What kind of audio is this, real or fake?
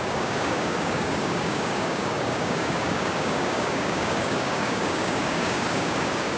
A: fake